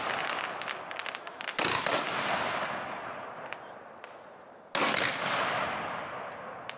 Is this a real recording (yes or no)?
yes